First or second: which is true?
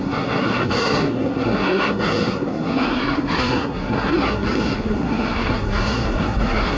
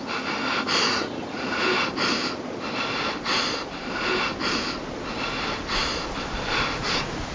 second